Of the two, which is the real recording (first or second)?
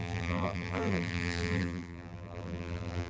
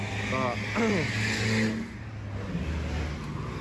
second